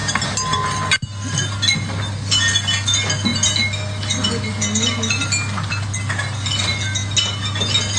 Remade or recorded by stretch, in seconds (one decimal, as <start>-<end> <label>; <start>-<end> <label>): 0.0-8.0 recorded